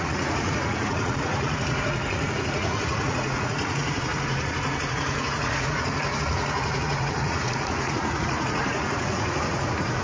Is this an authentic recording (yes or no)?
no